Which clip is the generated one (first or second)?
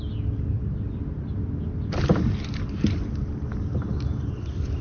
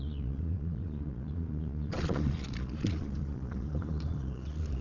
second